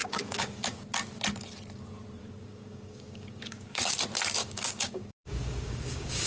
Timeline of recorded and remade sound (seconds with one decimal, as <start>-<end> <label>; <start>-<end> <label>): 0.0-0.8 remade; 0.8-2.2 recorded; 2.2-3.9 remade; 3.9-4.4 recorded; 4.4-6.3 remade